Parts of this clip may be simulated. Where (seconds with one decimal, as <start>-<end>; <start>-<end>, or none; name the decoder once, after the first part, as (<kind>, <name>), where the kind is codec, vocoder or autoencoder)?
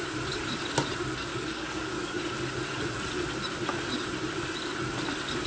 1.3-2.2 (codec, DAC)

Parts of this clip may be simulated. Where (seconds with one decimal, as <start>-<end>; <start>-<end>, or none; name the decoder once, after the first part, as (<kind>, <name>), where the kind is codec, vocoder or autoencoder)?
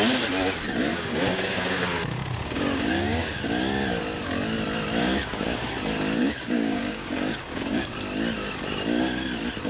0.9-3.4 (codec, DAC); 5.0-5.7; 6.2-7.9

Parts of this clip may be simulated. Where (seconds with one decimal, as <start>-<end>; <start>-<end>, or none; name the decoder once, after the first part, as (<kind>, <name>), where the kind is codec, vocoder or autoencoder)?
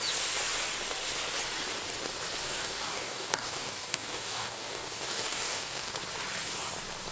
2.4-5.9 (codec, DAC)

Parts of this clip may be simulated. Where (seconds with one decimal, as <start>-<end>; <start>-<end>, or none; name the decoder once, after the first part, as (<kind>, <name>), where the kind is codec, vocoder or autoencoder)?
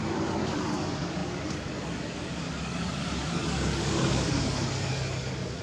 0.0-5.6 (codec, DAC)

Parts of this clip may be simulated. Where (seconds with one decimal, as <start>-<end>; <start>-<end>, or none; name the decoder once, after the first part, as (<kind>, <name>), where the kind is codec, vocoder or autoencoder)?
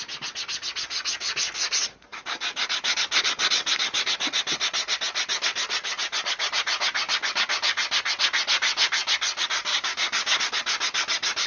9.7-10.4 (codec, DAC)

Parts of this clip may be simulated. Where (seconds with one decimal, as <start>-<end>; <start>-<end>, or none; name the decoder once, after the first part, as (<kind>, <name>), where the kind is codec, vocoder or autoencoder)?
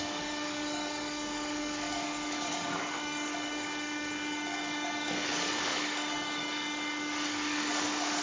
0.0-8.2 (codec, DAC)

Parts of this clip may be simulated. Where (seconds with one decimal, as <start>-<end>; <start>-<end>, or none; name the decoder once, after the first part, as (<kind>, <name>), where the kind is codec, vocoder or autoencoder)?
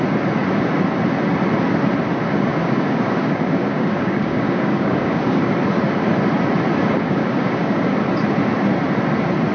2.5-5.5 (codec, DAC); 6.8-7.9